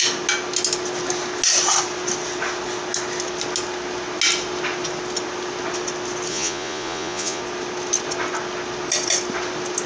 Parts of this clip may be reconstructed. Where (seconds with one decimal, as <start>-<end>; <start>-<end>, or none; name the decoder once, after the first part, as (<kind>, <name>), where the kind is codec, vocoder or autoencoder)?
6.3-7.4 (vocoder, Vocos)